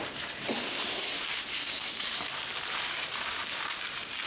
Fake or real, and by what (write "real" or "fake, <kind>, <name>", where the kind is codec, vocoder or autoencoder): real